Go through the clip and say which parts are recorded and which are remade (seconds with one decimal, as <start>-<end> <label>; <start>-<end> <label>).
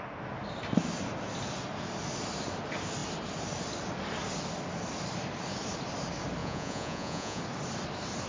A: 0.0-6.4 recorded; 6.4-7.4 remade; 7.4-8.3 recorded